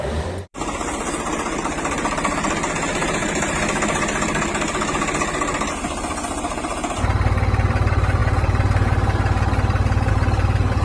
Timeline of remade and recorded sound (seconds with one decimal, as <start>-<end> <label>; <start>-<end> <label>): 0.0-3.2 remade; 3.2-5.7 recorded; 5.7-10.8 remade